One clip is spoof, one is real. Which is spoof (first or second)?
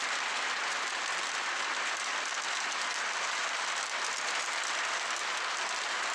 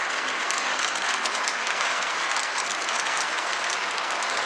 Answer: second